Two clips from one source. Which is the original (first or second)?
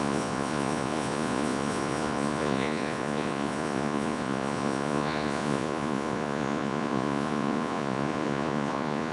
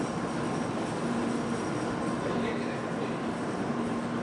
second